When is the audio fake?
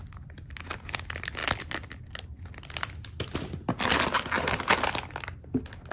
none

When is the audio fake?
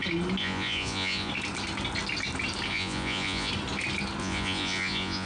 0.4-1.3 (vocoder, Vocos); 2.7-3.5; 4.2-5.3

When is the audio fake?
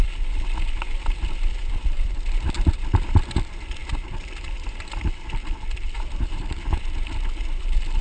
0.0-8.0 (vocoder, BigVGAN v2)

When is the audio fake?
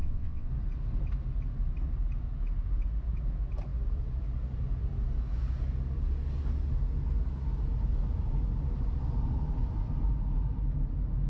0.0-0.5 (vocoder, WaveNeXt)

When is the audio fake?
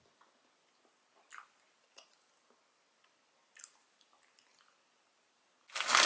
none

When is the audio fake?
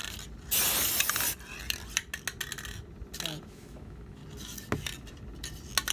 3.5-4.2 (autoencoder, DAC-VAE)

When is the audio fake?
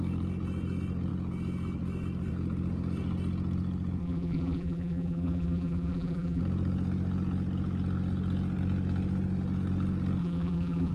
4.0-6.4 (vocoder, BigVGAN v2); 10.2-10.9